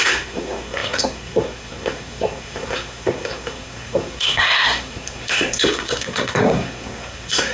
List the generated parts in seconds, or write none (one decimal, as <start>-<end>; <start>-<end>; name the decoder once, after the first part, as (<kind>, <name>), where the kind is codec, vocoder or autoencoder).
0.0-7.5 (codec, SNAC)